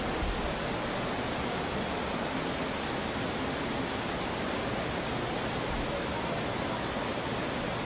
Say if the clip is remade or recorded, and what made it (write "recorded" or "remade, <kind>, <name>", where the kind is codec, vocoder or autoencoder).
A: recorded